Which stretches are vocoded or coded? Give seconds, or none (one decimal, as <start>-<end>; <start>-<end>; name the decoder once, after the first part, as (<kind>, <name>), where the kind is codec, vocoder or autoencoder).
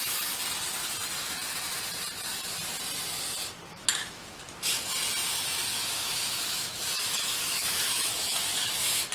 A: 3.7-4.4 (autoencoder, DAC-VAE); 5.7-9.1